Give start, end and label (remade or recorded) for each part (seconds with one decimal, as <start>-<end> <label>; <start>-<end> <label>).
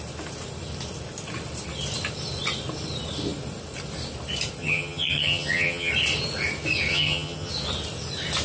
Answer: 0.0-4.6 recorded; 4.6-5.9 remade; 5.9-6.9 recorded; 6.9-7.5 remade; 7.5-8.4 recorded